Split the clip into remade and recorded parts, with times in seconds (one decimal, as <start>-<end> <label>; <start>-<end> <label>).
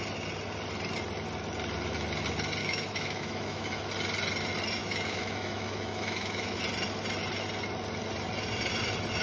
0.0-2.6 recorded; 2.6-3.9 remade; 3.9-4.8 recorded; 4.8-6.6 remade; 6.6-9.2 recorded